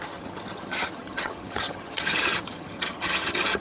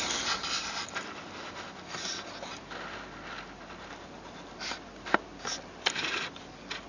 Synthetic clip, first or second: first